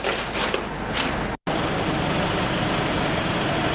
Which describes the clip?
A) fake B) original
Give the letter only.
B